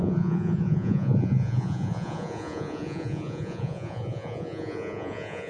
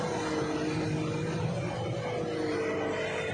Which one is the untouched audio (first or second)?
second